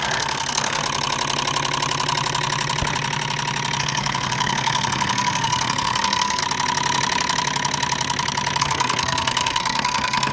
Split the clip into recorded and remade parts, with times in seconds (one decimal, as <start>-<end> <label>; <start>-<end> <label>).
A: 0.0-0.8 remade; 0.8-3.8 recorded; 3.8-6.4 remade; 6.4-8.6 recorded; 8.6-10.3 remade